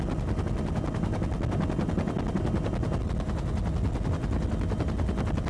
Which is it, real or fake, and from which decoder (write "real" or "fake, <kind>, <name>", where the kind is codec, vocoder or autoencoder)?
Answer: real